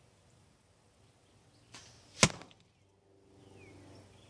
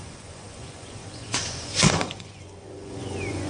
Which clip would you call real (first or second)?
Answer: first